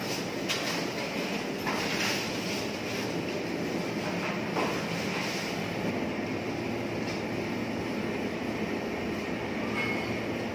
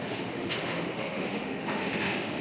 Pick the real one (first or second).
first